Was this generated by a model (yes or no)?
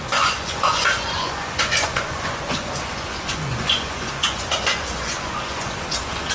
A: yes